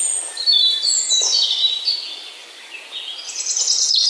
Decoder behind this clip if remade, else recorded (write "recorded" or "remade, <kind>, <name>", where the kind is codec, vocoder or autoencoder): recorded